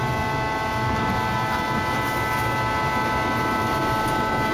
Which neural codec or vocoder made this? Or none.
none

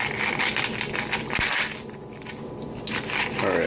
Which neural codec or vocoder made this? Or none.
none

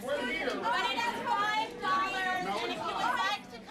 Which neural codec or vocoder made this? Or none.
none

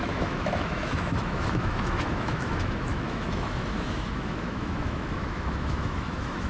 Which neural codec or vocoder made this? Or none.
autoencoder, DAC-VAE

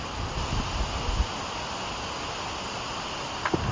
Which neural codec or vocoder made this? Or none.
none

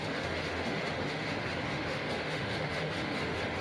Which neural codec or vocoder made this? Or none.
autoencoder, DAC-VAE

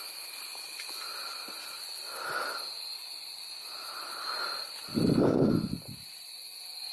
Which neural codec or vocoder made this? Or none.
none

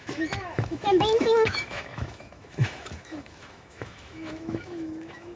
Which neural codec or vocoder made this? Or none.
autoencoder, DAC-VAE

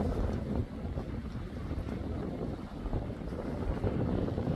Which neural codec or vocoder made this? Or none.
none